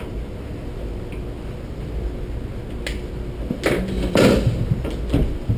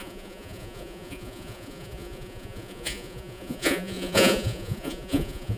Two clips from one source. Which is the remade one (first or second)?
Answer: second